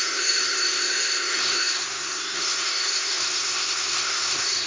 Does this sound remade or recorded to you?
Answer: remade